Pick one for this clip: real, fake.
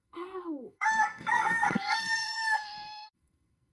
fake